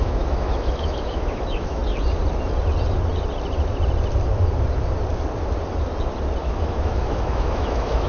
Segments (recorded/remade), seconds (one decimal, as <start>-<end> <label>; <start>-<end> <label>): 0.0-1.8 remade; 1.8-6.4 recorded; 6.4-8.1 remade